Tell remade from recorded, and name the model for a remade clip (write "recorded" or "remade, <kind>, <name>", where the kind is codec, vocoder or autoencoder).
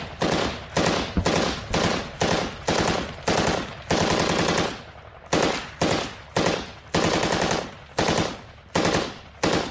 recorded